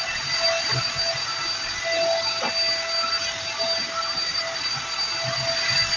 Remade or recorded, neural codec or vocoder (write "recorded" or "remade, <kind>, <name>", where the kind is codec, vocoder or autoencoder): recorded